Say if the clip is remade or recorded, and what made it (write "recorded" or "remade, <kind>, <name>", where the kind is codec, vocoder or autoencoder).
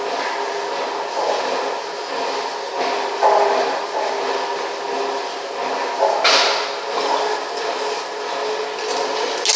recorded